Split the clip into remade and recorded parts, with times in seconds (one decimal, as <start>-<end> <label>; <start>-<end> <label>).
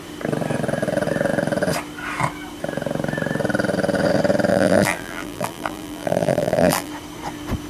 0.0-4.5 recorded; 4.5-6.9 remade; 6.9-7.7 recorded